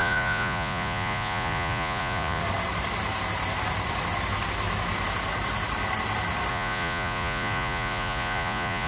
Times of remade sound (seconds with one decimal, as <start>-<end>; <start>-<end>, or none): 0.0-2.4; 6.5-8.9